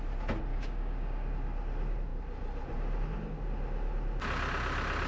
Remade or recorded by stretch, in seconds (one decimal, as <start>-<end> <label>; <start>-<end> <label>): 0.0-0.5 recorded; 0.5-1.3 remade; 1.3-5.1 recorded